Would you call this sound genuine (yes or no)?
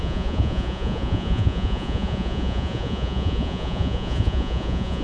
no